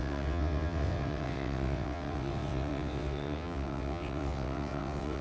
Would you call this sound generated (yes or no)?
yes